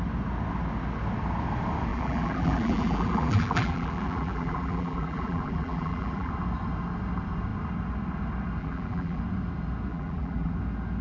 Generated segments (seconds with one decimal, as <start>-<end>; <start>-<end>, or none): 1.9-6.3; 8.6-9.2; 9.9-10.5